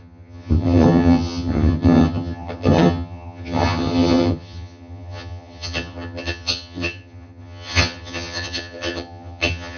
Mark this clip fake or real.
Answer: fake